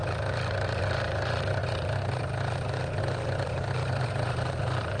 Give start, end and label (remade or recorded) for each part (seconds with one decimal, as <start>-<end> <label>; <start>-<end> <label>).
0.0-5.0 recorded